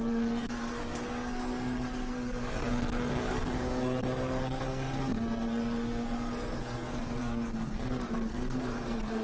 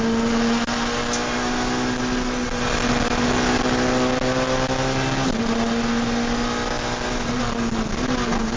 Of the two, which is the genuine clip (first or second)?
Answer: second